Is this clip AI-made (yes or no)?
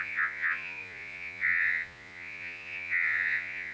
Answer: yes